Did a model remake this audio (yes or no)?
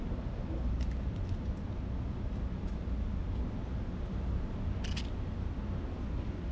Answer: no